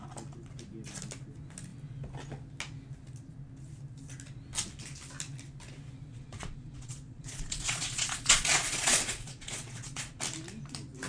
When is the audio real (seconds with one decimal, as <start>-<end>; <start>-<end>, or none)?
0.0-6.1; 10.2-11.1